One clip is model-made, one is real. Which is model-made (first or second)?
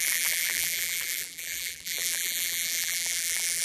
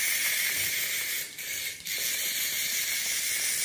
first